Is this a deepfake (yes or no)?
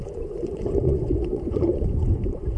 yes